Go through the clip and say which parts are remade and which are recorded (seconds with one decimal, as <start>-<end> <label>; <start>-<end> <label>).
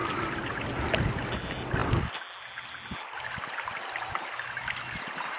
0.0-5.4 recorded